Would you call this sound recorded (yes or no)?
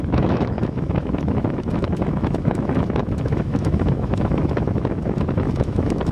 no